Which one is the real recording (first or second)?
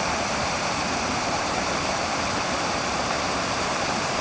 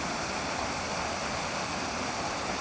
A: second